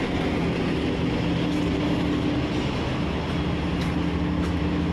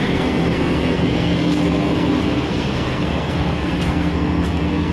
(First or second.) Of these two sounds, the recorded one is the first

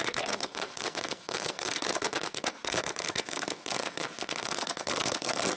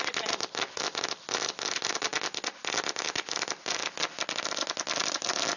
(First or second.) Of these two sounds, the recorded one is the second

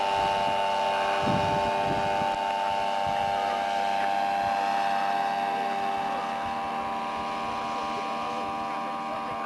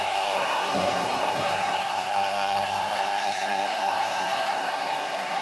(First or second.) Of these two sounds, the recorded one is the first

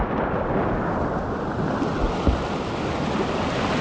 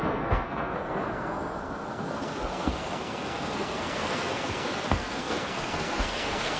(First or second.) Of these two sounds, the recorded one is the first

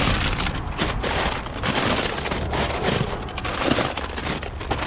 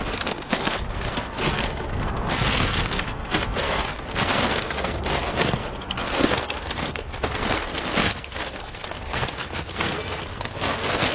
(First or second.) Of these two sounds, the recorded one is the first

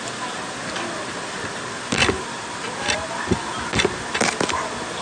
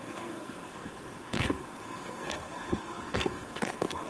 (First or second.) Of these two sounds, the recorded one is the first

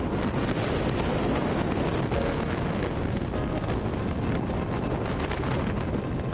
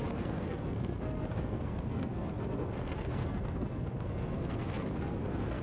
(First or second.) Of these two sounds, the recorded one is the first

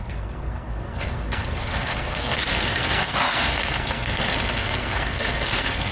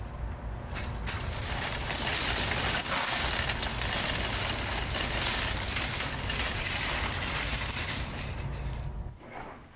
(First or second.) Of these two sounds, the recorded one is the second